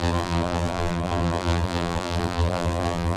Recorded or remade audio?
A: remade